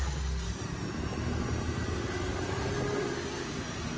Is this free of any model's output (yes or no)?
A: yes